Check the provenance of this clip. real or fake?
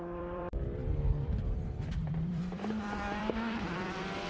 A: fake